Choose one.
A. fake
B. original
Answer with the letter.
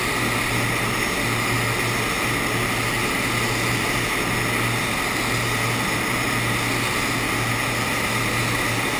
B